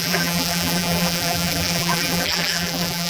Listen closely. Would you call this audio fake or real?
fake